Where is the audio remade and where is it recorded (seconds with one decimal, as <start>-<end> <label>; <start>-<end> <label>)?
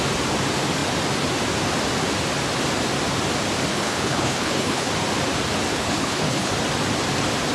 0.0-3.7 recorded; 3.7-4.9 remade; 4.9-5.7 recorded; 5.7-6.5 remade; 6.5-7.5 recorded